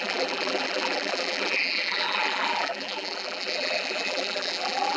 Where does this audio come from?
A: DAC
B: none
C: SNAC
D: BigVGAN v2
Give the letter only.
D